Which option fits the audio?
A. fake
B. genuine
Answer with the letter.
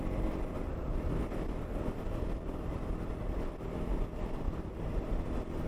B